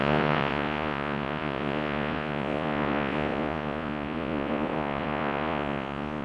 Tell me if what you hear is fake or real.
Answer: fake